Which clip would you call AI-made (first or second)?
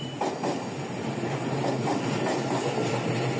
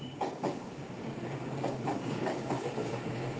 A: second